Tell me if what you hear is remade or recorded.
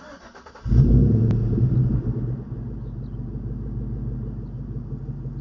recorded